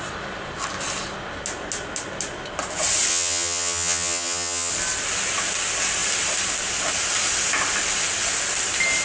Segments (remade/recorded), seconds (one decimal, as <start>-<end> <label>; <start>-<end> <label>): 0.0-3.1 recorded; 3.1-4.7 remade; 4.7-9.0 recorded